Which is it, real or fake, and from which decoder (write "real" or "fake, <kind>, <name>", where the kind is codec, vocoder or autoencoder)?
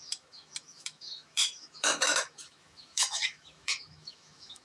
fake, autoencoder, DAC-VAE